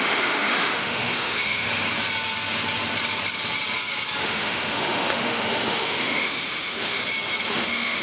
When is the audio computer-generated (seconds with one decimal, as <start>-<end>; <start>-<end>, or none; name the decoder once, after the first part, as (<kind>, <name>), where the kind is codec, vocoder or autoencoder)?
0.0-1.7 (autoencoder, DAC-VAE); 4.2-7.0; 7.5-8.0